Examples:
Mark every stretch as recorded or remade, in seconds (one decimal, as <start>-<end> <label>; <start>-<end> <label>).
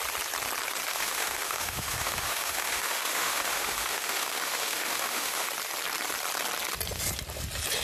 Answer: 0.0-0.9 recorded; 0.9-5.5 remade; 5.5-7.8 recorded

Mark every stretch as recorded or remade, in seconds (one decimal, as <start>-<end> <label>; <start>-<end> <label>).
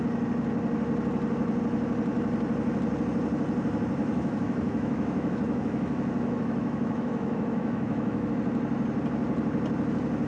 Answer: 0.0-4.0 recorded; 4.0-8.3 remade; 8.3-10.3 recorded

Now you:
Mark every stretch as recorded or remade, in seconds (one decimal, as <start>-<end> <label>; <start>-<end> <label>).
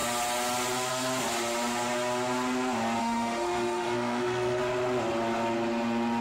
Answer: 0.0-3.0 recorded; 3.0-4.6 remade; 4.6-6.2 recorded